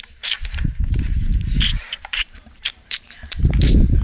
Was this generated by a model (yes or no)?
yes